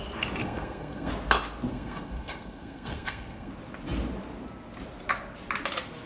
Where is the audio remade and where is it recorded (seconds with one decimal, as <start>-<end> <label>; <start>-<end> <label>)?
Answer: 0.0-0.4 recorded; 0.4-1.1 remade; 1.1-1.7 recorded; 1.7-3.5 remade; 3.5-6.1 recorded